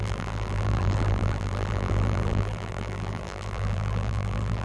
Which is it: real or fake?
fake